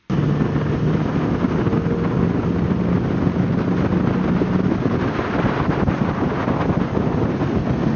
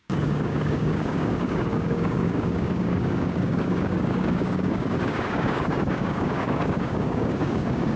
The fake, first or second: second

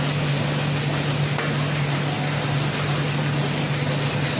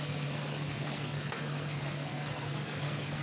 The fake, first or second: second